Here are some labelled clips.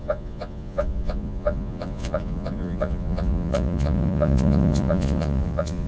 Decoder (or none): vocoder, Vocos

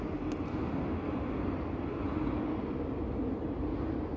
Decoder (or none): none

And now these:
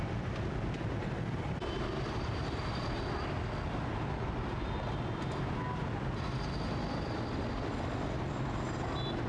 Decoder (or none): none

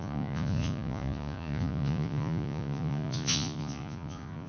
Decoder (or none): vocoder, Vocos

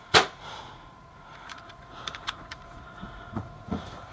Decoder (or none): vocoder, Vocos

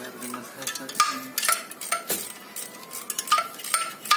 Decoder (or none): none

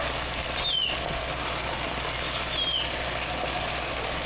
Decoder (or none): none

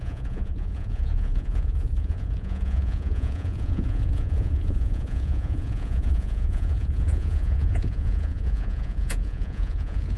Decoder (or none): vocoder, Vocos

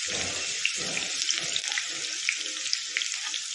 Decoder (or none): none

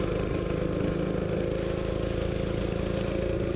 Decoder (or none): none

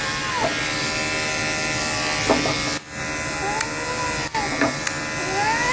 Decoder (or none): none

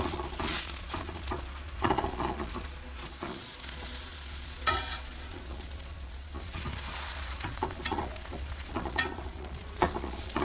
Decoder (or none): vocoder, Vocos